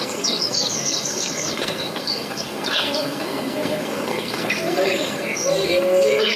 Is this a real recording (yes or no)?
no